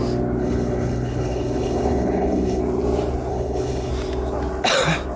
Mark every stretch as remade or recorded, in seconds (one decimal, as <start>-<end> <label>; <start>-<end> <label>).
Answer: 0.0-0.4 recorded; 0.4-2.6 remade; 2.6-3.3 recorded; 3.3-3.9 remade; 3.9-5.2 recorded